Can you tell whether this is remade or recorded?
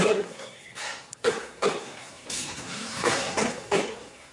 remade